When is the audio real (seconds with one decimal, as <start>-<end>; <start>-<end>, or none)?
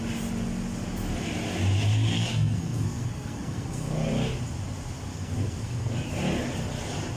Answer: 0.0-2.1; 4.1-5.1; 5.9-7.2